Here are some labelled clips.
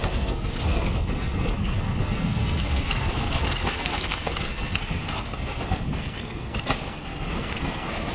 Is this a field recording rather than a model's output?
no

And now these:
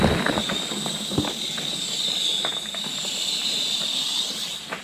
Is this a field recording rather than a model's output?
yes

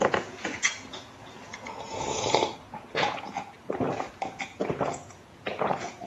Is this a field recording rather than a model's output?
no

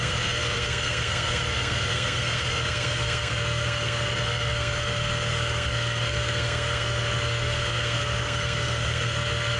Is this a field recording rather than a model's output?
no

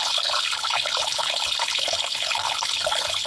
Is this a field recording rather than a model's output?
no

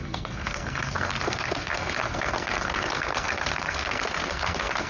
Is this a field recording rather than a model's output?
no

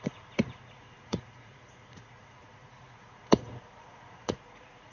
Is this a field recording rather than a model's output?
no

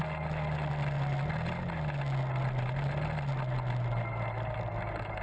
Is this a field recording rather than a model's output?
yes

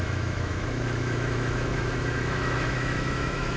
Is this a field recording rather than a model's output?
no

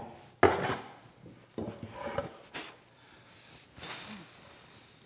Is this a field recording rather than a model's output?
yes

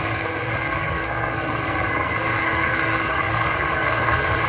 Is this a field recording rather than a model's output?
no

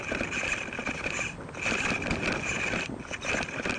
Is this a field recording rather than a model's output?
yes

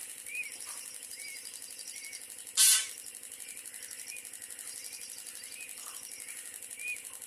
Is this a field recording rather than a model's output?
no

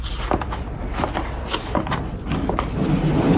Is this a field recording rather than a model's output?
yes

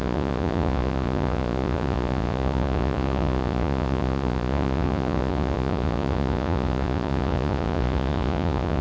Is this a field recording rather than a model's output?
no